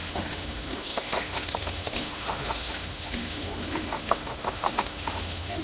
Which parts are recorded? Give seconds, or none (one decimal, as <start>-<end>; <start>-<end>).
none